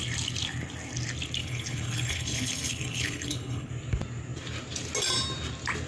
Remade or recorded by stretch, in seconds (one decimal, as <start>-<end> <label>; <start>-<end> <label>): 0.0-1.4 recorded; 1.4-3.7 remade; 3.7-5.9 recorded